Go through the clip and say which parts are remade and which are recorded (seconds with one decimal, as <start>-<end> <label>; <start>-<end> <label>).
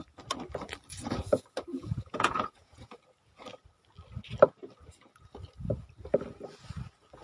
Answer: 0.0-0.9 recorded; 0.9-1.4 remade; 1.4-1.8 recorded; 1.8-2.9 remade; 2.9-7.2 recorded